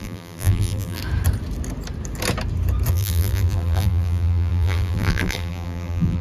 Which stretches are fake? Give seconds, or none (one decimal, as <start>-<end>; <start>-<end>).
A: 0.0-1.0; 2.9-6.2